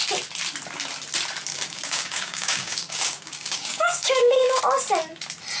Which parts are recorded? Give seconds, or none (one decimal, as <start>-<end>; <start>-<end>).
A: 0.0-1.5; 4.6-5.6